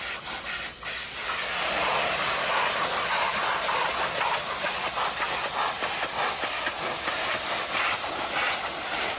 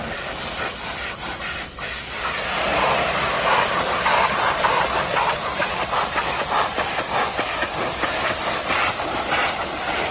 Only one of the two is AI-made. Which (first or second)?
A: second